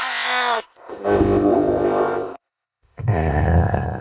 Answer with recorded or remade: remade